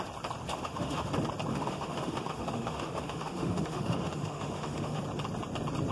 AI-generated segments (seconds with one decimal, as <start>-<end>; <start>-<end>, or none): 0.5-1.1; 1.5-5.0